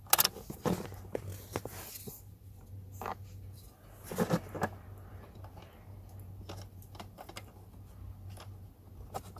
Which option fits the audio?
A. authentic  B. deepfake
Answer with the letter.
A